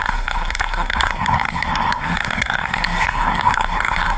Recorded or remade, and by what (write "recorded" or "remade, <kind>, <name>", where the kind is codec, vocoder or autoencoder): remade, codec, SNAC